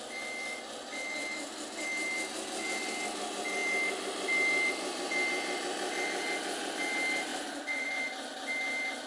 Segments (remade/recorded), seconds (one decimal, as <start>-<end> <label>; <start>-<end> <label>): 0.0-7.3 recorded; 7.3-8.0 remade; 8.0-9.1 recorded